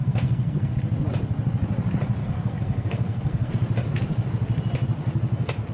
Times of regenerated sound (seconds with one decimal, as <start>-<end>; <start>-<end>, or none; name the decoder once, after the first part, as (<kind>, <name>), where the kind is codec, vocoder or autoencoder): 0.0-0.7 (codec, SNAC); 2.2-3.5